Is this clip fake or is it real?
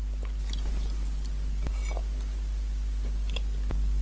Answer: real